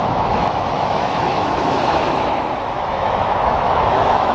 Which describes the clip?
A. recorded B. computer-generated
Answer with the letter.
B